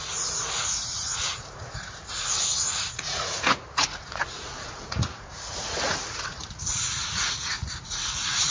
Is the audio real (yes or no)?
no